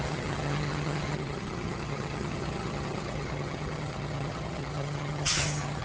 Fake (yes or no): yes